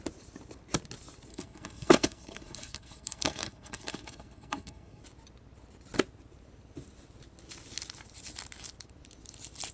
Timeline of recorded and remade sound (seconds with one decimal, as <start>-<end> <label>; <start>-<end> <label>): 0.0-1.3 recorded; 1.3-5.0 remade; 5.0-9.7 recorded